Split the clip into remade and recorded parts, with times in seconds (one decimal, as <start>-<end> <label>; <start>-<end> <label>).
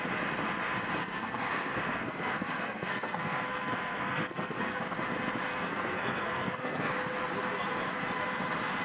0.0-1.0 recorded; 1.0-4.8 remade; 4.8-5.5 recorded; 5.5-6.9 remade; 6.9-8.8 recorded